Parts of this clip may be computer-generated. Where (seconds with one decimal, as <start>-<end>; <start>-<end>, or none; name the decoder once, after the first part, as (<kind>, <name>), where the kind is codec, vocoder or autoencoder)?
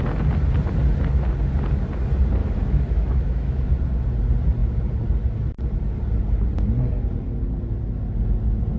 2.4-3.7 (autoencoder, DAC-VAE)